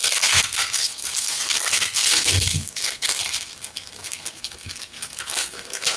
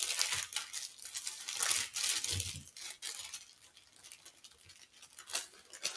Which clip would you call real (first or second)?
second